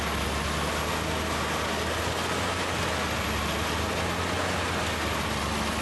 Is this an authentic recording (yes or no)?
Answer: yes